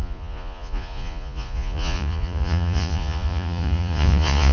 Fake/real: fake